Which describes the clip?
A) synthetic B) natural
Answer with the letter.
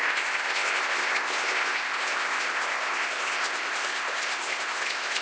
A